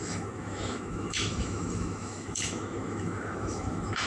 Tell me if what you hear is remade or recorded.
remade